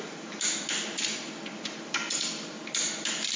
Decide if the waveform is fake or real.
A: real